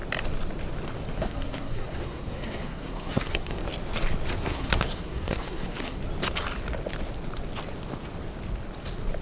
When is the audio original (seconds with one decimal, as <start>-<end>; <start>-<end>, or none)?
0.0-1.2; 3.6-4.4; 6.0-9.2